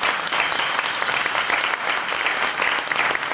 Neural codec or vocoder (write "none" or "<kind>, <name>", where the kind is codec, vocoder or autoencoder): none